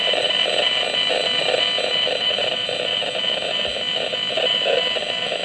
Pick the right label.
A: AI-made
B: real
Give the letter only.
B